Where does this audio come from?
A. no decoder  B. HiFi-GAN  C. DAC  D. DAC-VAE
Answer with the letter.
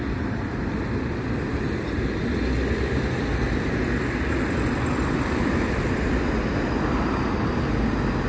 A